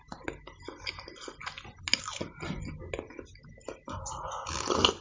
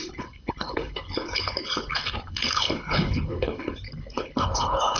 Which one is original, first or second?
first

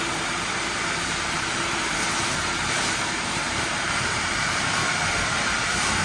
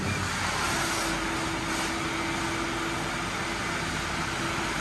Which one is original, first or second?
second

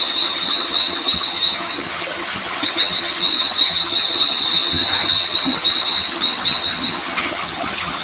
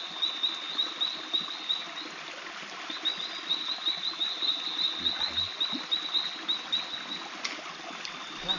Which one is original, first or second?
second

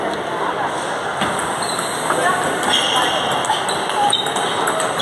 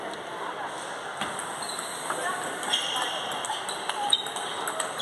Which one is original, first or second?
first